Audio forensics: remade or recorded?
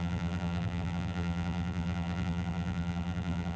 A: remade